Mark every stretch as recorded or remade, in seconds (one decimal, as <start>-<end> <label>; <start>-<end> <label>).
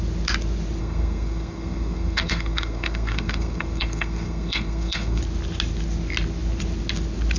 0.0-0.8 recorded; 0.8-5.2 remade; 5.2-7.4 recorded